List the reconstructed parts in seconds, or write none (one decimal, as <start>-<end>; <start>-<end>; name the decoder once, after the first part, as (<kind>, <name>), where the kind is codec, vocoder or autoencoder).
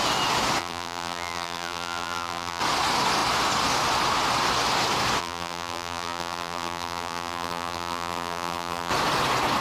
0.6-2.6 (vocoder, BigVGAN v2); 5.2-8.9